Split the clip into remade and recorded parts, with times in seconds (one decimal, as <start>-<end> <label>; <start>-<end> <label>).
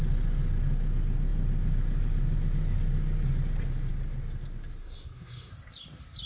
0.0-4.8 recorded; 4.8-5.5 remade; 5.5-6.3 recorded